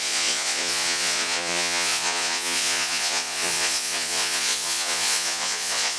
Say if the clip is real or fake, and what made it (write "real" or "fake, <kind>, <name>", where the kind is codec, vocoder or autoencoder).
fake, vocoder, Vocos